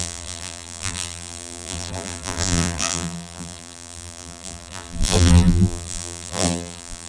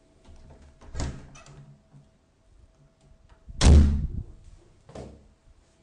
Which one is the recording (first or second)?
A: second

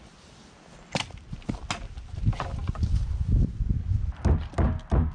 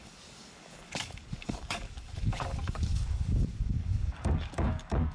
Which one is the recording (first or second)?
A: first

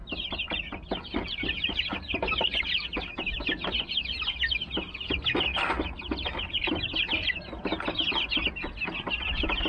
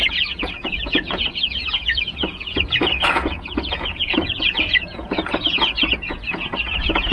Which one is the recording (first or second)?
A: first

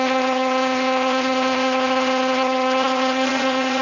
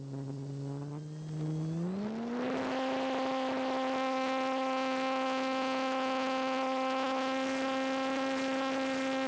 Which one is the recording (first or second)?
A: second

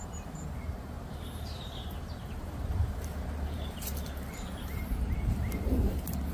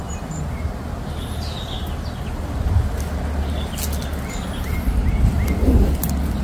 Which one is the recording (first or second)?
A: second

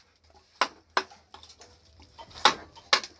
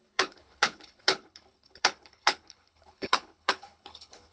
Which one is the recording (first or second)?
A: first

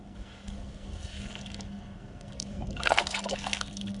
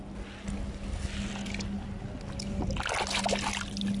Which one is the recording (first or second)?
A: second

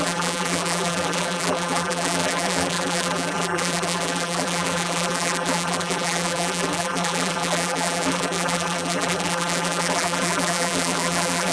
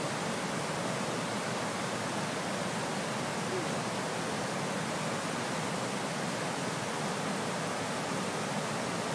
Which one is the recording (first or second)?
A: second